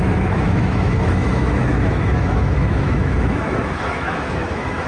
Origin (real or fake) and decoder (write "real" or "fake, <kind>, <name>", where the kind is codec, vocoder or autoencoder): fake, autoencoder, DAC-VAE